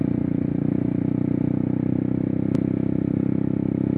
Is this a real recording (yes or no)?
yes